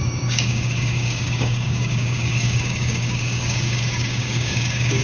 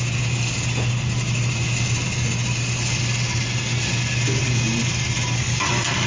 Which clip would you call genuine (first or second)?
second